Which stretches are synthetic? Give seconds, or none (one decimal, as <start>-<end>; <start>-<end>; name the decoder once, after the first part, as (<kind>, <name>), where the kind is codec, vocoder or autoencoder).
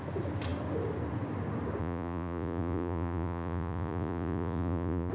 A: 1.8-5.1 (vocoder, Vocos)